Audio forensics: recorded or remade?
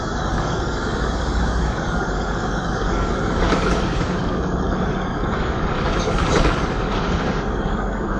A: remade